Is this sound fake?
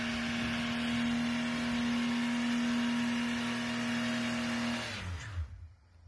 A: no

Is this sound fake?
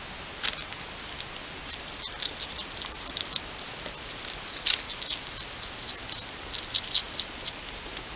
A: no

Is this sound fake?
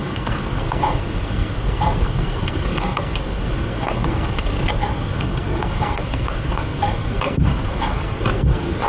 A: yes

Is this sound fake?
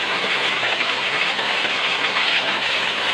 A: yes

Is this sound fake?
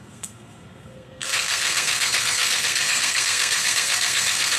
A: yes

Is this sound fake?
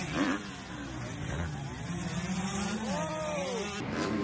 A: no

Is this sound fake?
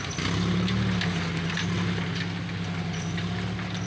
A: no